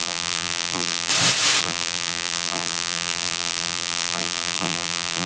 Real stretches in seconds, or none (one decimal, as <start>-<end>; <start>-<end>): 1.1-1.6